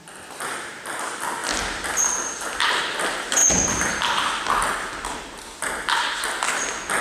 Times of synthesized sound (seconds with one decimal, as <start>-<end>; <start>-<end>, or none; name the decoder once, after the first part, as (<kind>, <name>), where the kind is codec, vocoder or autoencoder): 1.4-2.4 (vocoder, BigVGAN v2); 3.4-4.0